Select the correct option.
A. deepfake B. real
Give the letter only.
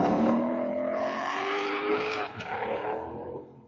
A